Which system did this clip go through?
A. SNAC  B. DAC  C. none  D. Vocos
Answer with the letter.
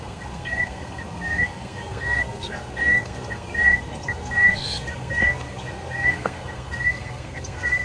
A